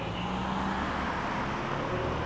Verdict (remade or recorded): recorded